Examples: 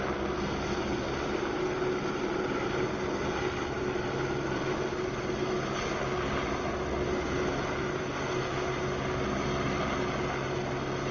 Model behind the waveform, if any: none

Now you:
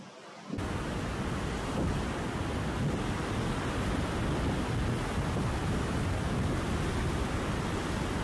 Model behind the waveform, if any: none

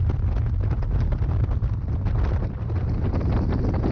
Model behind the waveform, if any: none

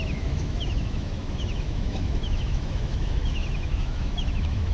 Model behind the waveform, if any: autoencoder, DAC-VAE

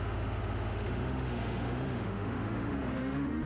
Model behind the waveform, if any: autoencoder, DAC-VAE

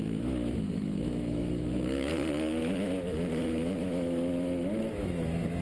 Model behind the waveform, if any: autoencoder, DAC-VAE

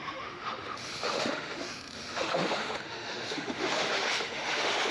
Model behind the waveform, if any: autoencoder, DAC-VAE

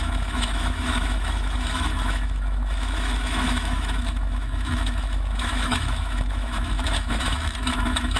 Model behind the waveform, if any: autoencoder, DAC-VAE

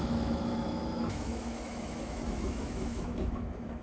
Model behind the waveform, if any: autoencoder, DAC-VAE